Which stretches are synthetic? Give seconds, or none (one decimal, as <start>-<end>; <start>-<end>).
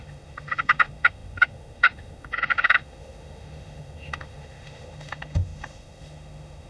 0.0-6.7